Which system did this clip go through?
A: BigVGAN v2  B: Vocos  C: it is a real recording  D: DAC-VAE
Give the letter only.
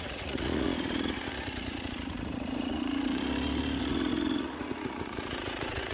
B